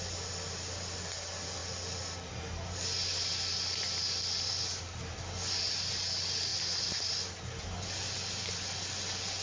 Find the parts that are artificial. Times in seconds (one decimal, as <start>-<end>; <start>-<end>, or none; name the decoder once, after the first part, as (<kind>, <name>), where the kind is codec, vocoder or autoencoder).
none